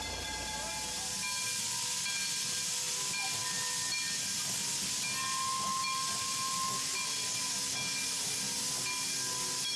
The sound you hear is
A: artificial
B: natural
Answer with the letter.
B